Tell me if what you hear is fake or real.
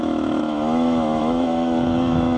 fake